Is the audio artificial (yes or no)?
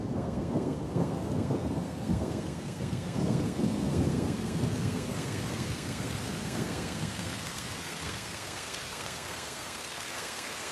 yes